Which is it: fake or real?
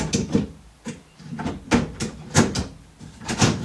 real